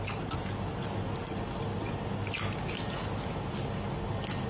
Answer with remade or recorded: recorded